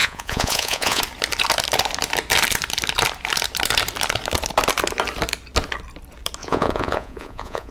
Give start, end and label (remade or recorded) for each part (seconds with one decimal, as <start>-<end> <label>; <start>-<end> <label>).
0.0-1.0 remade; 1.0-6.4 recorded; 6.4-7.7 remade